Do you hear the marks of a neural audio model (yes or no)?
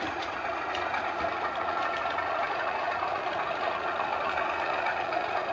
yes